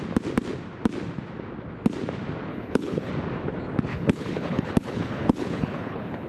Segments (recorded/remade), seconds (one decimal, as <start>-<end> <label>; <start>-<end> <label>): 0.0-2.5 recorded; 2.5-3.1 remade; 3.1-3.9 recorded; 3.9-6.3 remade